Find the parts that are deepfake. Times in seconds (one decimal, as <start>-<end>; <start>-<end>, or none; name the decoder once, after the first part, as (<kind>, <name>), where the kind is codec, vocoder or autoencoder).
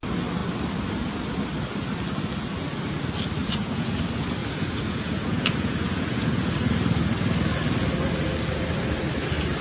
3.4-4.0 (vocoder, Vocos); 4.4-6.5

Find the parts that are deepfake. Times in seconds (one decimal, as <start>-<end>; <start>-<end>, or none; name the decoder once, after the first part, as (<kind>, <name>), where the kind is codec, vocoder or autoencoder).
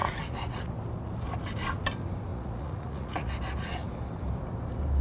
0.0-0.7 (vocoder, Vocos); 2.3-3.3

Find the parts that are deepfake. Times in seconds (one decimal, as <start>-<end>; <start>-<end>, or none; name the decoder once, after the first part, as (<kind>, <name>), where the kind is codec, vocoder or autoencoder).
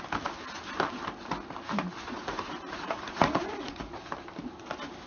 2.0-4.0 (vocoder, Vocos)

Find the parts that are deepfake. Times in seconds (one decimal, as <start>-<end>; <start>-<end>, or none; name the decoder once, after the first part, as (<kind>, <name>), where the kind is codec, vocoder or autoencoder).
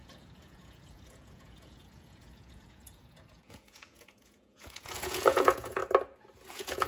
0.0-5.8 (vocoder, Vocos); 6.5-6.9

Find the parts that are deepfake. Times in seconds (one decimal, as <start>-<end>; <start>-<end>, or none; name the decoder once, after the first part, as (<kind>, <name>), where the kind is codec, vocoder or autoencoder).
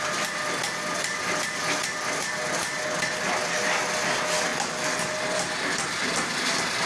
none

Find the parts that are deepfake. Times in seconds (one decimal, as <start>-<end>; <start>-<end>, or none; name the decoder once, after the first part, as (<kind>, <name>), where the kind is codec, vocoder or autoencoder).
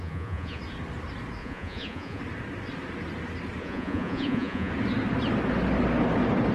0.0-0.6 (vocoder, Vocos); 1.4-2.2; 3.6-4.7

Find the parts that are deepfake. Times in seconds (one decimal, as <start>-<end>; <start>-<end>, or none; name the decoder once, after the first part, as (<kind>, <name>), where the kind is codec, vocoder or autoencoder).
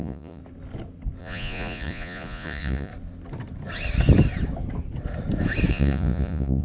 0.0-0.4 (vocoder, Vocos); 1.2-2.9; 5.7-6.6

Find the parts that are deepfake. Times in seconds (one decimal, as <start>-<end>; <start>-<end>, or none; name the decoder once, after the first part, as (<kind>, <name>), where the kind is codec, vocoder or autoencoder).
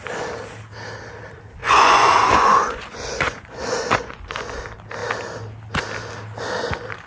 1.6-4.6 (vocoder, Vocos)